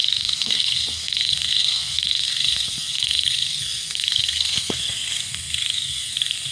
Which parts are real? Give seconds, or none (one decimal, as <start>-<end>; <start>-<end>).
none